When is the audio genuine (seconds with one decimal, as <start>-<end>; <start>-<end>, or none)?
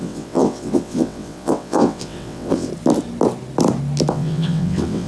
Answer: 2.7-4.1